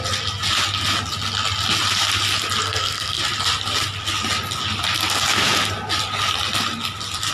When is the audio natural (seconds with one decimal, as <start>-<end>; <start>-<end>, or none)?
0.0-2.6; 3.2-7.3

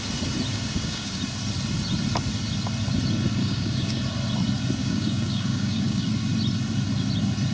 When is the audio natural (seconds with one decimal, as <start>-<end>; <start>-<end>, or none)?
0.0-0.5; 1.2-3.4; 4.0-4.8; 6.1-7.5